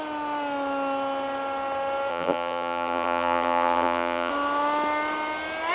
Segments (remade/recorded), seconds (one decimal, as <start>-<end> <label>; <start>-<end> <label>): 0.0-2.1 recorded; 2.1-4.3 remade; 4.3-5.7 recorded

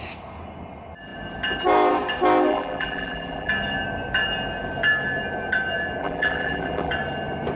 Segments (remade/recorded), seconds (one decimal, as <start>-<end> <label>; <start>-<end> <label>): 0.0-2.5 recorded; 2.5-3.5 remade; 3.5-6.0 recorded; 6.0-6.9 remade; 6.9-7.6 recorded

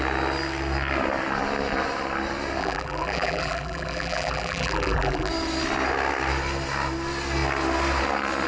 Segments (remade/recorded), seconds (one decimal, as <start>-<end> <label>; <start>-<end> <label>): 0.0-2.6 recorded; 2.6-5.3 remade; 5.3-8.5 recorded